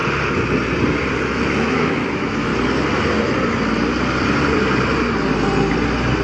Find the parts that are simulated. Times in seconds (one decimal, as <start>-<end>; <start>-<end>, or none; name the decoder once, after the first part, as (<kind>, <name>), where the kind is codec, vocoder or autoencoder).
1.2-2.5 (autoencoder, DAC-VAE)